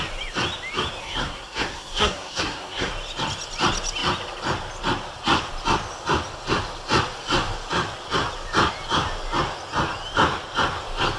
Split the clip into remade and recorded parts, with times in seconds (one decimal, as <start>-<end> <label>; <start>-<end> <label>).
0.0-1.0 recorded; 1.0-2.9 remade; 2.9-11.2 recorded